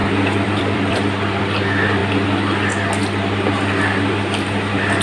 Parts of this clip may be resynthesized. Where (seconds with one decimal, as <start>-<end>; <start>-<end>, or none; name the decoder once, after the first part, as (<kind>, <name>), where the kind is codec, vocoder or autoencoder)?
0.0-1.4 (vocoder, BigVGAN v2)